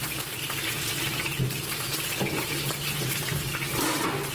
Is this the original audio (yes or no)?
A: no